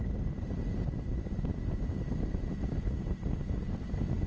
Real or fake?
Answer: real